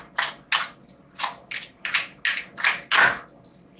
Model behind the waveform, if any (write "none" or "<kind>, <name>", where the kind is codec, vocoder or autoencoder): none